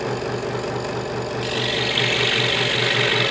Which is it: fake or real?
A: real